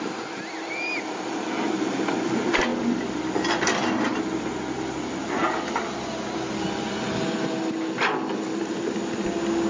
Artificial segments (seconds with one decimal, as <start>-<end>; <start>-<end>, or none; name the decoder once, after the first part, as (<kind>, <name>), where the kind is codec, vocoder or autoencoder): none

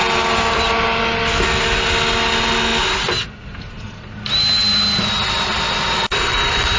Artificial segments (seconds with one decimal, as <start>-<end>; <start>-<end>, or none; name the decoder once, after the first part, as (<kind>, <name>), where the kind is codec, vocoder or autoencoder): none

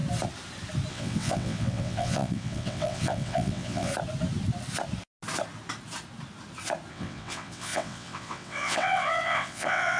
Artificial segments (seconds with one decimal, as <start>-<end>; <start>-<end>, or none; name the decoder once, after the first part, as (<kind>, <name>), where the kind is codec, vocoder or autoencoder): 0.9-3.9 (vocoder, WaveNeXt); 6.9-10.0

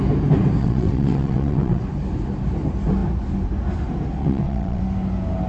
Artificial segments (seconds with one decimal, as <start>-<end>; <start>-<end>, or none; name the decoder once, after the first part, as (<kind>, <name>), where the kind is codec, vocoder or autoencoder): 0.6-1.8 (vocoder, WaveNeXt); 4.2-4.8

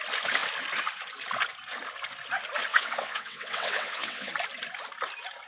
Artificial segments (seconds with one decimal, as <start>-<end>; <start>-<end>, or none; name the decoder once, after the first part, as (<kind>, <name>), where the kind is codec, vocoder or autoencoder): 2.7-4.3 (vocoder, WaveNeXt)

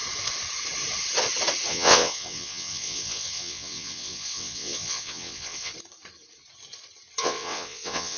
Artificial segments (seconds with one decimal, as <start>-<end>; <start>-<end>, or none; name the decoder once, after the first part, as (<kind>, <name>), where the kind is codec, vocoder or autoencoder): 1.7-5.7 (vocoder, WaveNeXt); 7.2-8.2

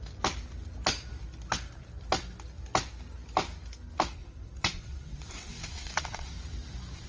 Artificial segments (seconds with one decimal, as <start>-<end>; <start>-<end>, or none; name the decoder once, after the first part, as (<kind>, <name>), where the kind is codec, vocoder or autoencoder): 4.2-6.3 (vocoder, WaveNeXt)